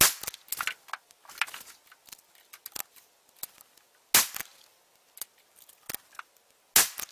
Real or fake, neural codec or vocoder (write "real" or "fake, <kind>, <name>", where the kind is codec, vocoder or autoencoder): real